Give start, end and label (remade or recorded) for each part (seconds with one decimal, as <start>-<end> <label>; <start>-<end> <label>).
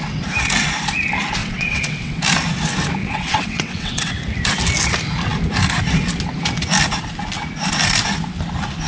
0.0-1.4 recorded; 1.4-2.2 remade; 2.2-3.0 recorded; 3.0-4.2 remade; 4.2-8.9 recorded